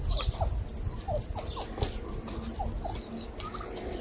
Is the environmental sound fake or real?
real